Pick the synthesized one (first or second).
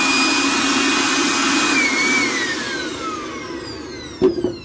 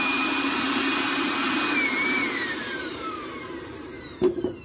second